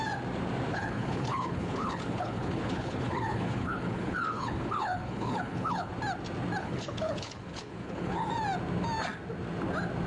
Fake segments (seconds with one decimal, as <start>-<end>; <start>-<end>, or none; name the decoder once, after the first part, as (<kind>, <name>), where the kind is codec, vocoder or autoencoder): 0.7-5.9 (codec, HILCodec); 6.6-8.3